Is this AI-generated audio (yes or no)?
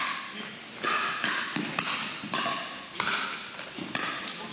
no